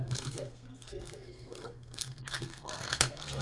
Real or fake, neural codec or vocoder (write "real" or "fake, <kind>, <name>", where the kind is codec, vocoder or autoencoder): fake, codec, SNAC